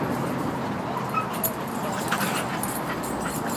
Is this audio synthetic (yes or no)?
no